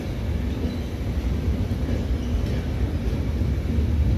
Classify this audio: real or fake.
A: real